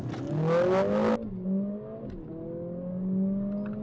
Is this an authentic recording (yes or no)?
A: yes